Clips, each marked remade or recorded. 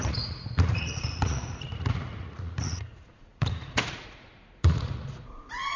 remade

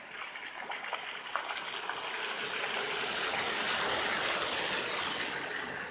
recorded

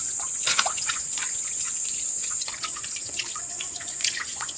remade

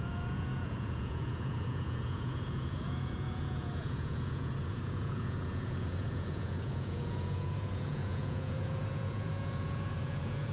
remade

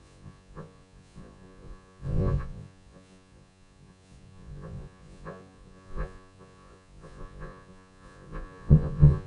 remade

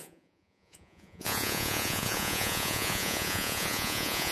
remade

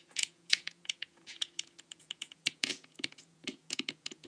remade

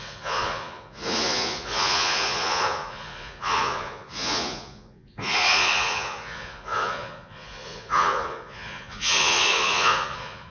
remade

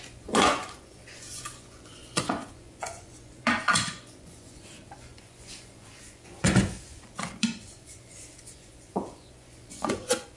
remade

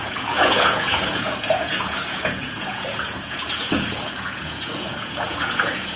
remade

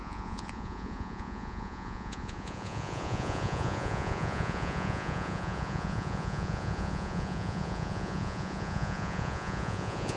remade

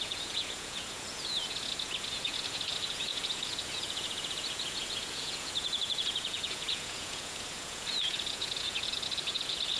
remade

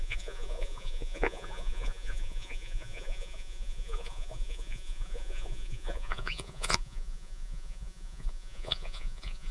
remade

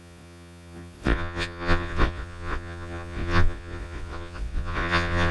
remade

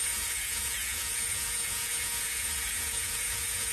remade